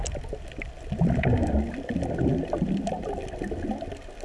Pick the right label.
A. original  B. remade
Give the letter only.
A